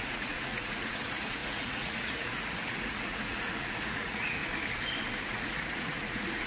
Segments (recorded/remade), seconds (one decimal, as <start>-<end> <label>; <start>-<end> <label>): 0.0-4.4 remade; 4.4-5.2 recorded; 5.2-6.5 remade